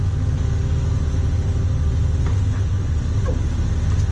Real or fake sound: real